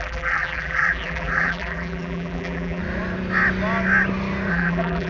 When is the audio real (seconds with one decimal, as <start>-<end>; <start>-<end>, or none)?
2.8-4.5